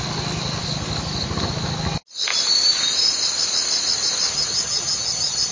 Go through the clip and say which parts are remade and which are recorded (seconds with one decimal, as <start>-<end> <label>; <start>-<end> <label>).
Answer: 0.0-4.3 recorded; 4.3-5.5 remade